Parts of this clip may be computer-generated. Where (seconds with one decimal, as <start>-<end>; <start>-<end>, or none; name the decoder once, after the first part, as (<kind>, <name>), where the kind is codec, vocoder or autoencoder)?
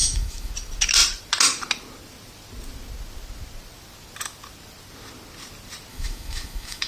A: 0.0-0.5 (autoencoder, DAC-VAE); 5.9-6.9